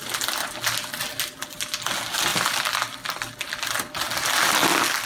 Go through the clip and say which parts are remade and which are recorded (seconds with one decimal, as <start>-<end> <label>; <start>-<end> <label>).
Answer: 0.0-5.1 recorded

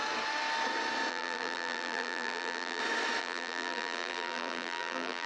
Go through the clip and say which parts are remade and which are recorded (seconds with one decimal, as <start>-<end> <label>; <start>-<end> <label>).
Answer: 0.0-1.1 recorded; 1.1-2.8 remade; 2.8-3.2 recorded; 3.2-5.3 remade

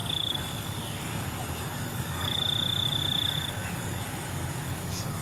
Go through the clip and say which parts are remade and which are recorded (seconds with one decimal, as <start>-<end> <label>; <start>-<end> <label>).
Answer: 0.0-2.4 remade; 2.4-3.6 recorded; 3.6-5.2 remade

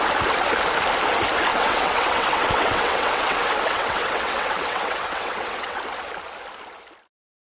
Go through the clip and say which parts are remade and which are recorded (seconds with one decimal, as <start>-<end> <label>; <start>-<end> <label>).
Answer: 0.0-1.5 recorded; 1.5-5.8 remade; 5.8-7.5 recorded